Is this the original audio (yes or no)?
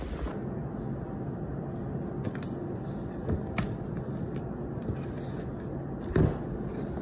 yes